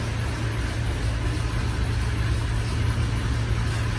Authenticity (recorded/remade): recorded